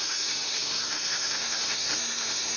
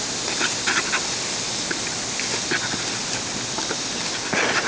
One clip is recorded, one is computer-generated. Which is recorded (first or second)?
second